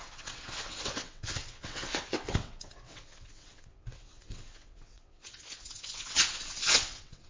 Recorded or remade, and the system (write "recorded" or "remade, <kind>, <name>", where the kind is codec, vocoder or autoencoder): remade, vocoder, WaveNeXt